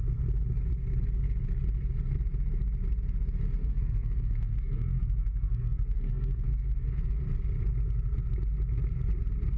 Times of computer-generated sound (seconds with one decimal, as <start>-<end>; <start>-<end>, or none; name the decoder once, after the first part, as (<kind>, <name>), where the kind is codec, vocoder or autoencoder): 3.6-7.2 (codec, SNAC)